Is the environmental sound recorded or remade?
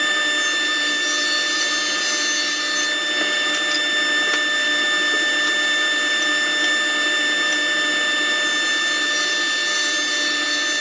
recorded